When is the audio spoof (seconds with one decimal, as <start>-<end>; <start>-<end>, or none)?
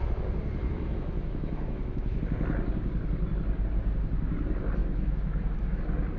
0.6-2.2; 4.8-5.8